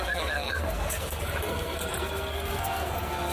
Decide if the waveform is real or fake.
fake